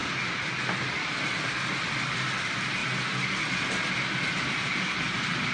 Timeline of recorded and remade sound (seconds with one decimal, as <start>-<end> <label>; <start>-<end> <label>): 0.0-5.5 recorded